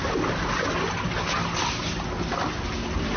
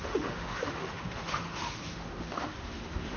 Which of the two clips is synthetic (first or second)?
second